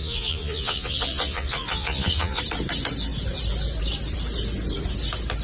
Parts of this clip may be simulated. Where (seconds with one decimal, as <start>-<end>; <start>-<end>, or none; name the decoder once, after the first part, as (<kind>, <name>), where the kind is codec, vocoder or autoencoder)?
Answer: 0.0-2.4 (vocoder, Vocos)